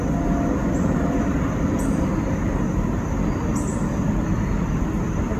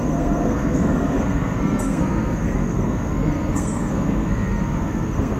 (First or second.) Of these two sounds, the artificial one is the second